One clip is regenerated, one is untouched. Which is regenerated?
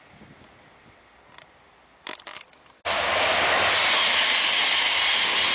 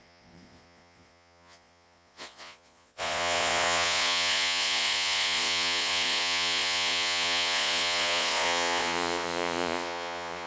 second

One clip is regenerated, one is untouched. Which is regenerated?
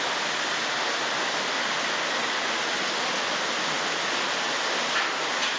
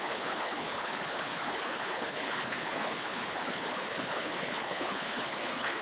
second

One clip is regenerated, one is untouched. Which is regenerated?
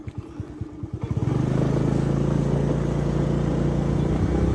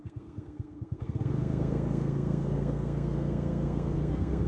second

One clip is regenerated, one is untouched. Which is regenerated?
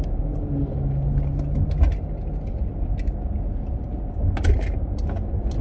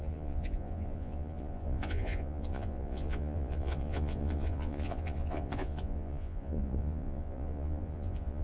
second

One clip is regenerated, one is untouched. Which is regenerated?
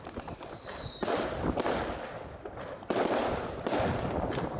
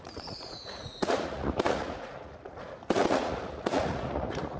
second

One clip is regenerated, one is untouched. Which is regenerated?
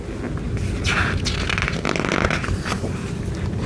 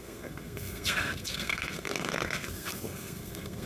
second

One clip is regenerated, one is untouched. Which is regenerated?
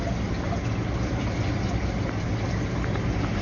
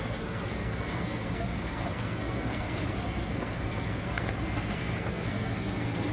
second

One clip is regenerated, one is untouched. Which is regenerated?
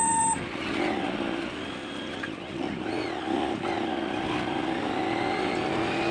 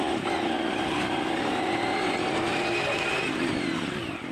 second